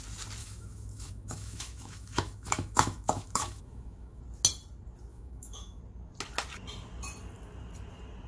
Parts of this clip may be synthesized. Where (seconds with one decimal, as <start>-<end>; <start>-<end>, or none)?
0.4-4.2; 5.1-5.8